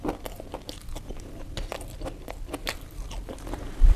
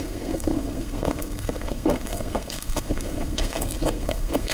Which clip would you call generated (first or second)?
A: second